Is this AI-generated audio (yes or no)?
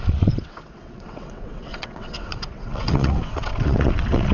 yes